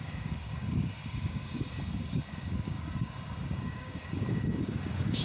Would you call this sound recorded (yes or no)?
no